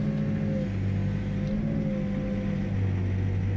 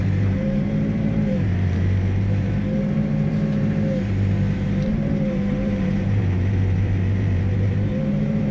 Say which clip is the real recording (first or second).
first